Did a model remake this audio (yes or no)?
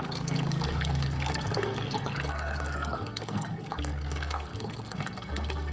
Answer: yes